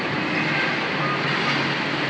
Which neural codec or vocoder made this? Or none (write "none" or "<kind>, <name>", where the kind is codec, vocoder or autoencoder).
none